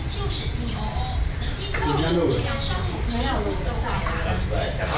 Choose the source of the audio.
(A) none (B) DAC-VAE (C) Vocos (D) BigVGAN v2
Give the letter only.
A